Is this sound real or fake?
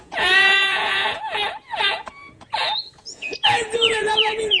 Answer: fake